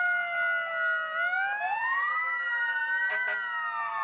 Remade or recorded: recorded